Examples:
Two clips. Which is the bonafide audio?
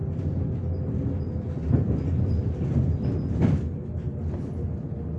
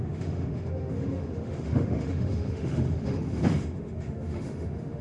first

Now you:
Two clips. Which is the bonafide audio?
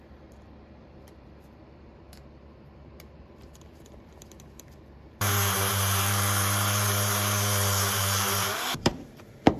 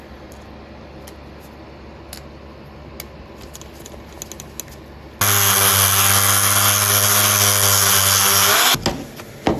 second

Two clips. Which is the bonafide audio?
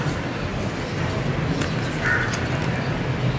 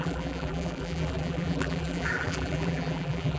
first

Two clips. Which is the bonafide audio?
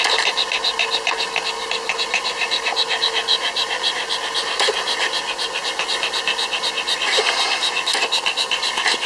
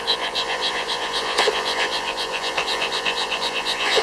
first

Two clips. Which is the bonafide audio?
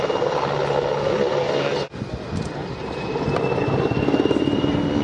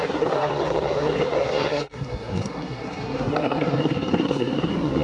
first